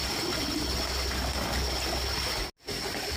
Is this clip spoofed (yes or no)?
no